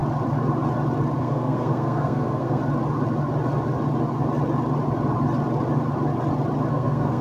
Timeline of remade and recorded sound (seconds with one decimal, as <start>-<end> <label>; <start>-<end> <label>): 0.0-1.2 recorded; 1.2-2.6 remade; 2.6-6.7 recorded; 6.7-7.2 remade